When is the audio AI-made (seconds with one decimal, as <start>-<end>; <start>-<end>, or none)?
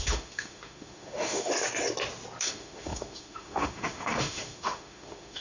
0.0-1.5; 2.4-5.4